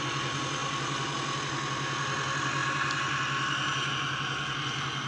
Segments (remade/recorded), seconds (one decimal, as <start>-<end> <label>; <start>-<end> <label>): 0.0-5.1 recorded